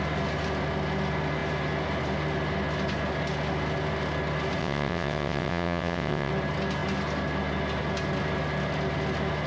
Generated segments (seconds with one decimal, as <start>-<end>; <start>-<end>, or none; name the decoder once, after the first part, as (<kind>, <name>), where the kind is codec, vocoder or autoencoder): 4.6-6.3 (vocoder, WaveNeXt)